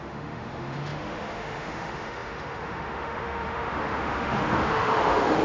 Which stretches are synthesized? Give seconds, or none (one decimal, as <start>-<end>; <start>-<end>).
0.0-5.4